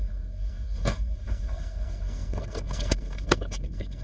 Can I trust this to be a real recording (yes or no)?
no